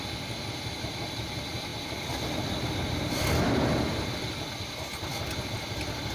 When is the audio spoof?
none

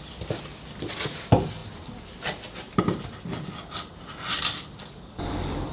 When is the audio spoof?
none

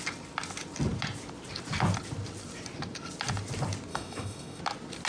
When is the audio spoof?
3.9-4.6 (autoencoder, DAC-VAE)

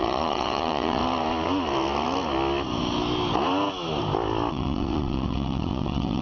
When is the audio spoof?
0.0-1.0 (vocoder, WaveNeXt); 4.5-6.2